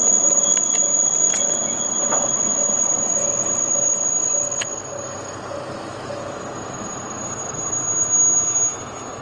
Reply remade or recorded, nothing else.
recorded